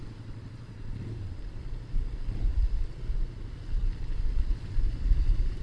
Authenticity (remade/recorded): remade